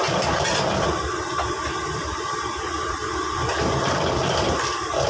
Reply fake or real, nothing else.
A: fake